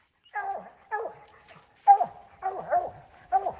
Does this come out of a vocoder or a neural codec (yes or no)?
no